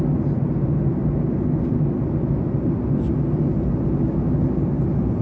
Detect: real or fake real